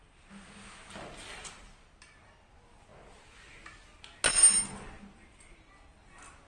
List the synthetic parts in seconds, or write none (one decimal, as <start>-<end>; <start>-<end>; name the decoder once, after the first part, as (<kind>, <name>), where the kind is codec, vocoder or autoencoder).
none

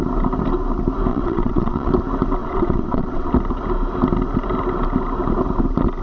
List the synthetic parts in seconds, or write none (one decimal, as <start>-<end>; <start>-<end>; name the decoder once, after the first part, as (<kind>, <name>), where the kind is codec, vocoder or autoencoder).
1.1-1.9 (vocoder, WaveNeXt); 2.4-3.3

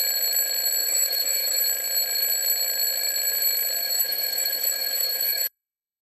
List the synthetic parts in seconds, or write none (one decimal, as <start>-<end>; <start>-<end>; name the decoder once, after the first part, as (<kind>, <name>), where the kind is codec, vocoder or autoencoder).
0.8-1.6 (autoencoder, DAC-VAE); 3.8-6.0

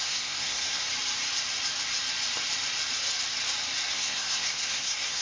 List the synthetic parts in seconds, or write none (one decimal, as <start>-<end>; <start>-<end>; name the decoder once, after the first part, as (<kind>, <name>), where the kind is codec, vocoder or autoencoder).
0.0-0.8 (codec, SNAC); 3.9-5.2

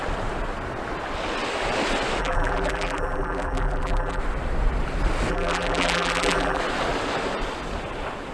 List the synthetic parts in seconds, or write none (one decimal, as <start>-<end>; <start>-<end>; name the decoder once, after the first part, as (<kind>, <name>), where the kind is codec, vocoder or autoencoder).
2.2-4.2 (vocoder, BigVGAN v2); 5.3-6.6

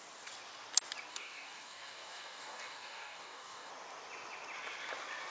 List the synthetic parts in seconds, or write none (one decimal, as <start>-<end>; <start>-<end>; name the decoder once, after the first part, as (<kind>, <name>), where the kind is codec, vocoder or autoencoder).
1.1-3.7 (codec, DAC)